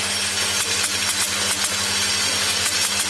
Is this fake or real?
real